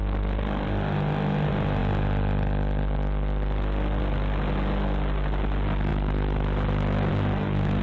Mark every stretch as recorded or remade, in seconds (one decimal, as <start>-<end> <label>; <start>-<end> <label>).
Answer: 0.0-7.8 recorded

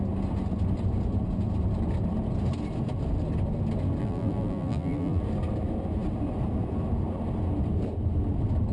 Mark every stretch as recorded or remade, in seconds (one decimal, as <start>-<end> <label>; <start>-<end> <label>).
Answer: 0.0-4.0 recorded; 4.0-5.2 remade; 5.2-8.7 recorded

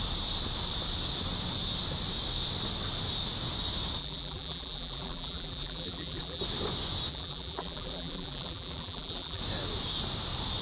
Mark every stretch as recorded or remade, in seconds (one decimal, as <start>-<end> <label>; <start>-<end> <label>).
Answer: 0.0-4.0 recorded; 4.0-6.4 remade; 6.4-7.1 recorded; 7.1-9.4 remade; 9.4-10.6 recorded

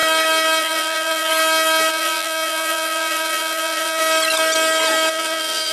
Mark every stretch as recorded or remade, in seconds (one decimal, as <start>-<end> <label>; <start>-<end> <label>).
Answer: 0.0-0.6 recorded; 0.6-1.3 remade; 1.3-1.9 recorded; 1.9-4.0 remade; 4.0-5.1 recorded; 5.1-5.7 remade

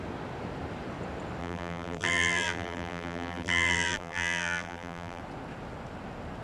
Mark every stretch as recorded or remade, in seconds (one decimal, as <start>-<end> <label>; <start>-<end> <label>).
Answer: 0.0-1.4 recorded; 1.4-5.2 remade; 5.2-6.4 recorded

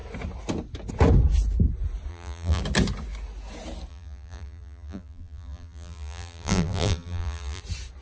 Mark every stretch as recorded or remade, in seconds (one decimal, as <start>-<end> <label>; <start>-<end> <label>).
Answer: 0.0-2.1 recorded; 2.1-2.6 remade; 2.6-3.9 recorded; 3.9-7.6 remade; 7.6-8.0 recorded